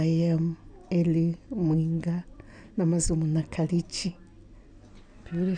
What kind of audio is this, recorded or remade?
recorded